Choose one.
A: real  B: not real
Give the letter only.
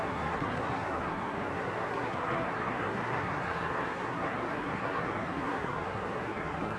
B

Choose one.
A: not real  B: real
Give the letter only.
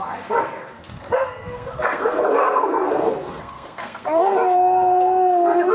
A